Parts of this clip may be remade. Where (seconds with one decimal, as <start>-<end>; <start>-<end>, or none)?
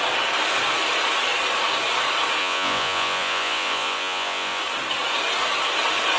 2.4-4.6